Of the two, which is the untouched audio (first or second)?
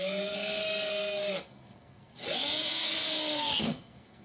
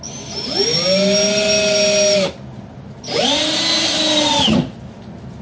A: second